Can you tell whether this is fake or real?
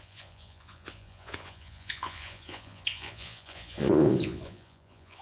fake